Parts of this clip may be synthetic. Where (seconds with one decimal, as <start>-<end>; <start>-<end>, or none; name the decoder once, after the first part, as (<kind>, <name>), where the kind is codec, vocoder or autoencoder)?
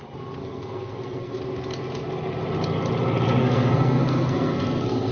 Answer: 0.4-1.4 (codec, SNAC); 3.4-5.1